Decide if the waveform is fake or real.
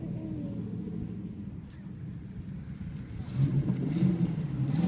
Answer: real